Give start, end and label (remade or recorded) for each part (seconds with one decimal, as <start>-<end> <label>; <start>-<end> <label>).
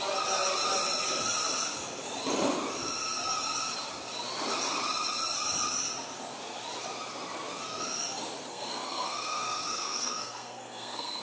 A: 0.0-8.5 recorded; 8.5-11.2 remade